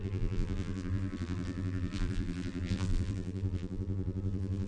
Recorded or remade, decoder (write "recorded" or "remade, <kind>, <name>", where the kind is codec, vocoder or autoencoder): remade, vocoder, BigVGAN v2